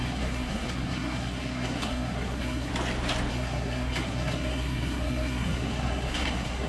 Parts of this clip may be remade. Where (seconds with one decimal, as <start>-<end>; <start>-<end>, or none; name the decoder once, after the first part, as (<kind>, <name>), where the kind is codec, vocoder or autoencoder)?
0.0-2.7 (codec, SNAC); 3.3-6.7